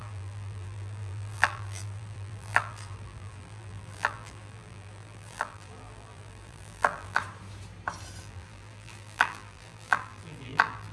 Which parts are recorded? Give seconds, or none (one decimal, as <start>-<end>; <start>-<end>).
7.2-8.2